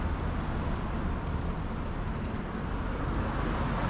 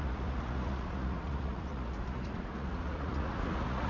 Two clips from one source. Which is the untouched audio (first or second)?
first